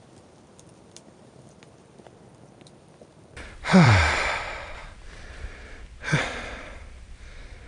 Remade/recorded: remade